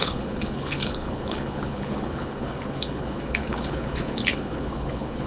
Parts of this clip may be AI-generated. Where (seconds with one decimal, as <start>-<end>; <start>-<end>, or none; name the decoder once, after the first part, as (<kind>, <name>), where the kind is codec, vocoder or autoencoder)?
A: 0.0-5.3 (codec, HILCodec)